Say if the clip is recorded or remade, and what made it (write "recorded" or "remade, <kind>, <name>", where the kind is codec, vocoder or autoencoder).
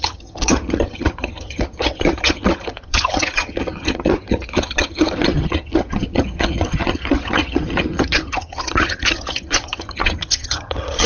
remade, vocoder, HiFi-GAN